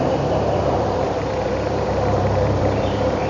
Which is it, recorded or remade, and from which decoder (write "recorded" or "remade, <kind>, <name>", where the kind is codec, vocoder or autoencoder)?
remade, vocoder, BigVGAN v2